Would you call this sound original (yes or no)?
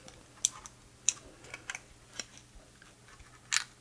yes